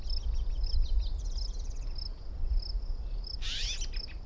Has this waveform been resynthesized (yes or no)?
no